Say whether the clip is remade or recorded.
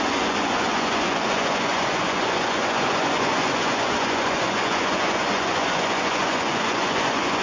remade